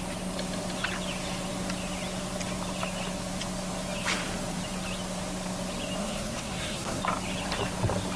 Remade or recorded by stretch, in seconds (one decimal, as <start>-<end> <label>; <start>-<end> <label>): 0.0-6.0 recorded; 6.0-7.0 remade; 7.0-8.2 recorded